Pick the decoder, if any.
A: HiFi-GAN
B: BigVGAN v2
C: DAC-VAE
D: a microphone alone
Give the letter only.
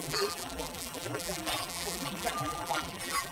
B